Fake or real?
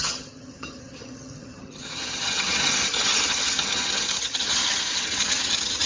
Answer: fake